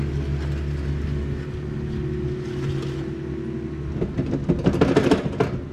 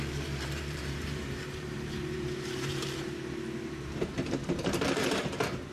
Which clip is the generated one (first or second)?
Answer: second